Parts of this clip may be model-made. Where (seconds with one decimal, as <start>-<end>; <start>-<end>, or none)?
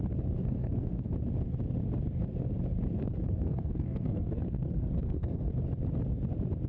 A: 0.4-1.1; 3.0-5.5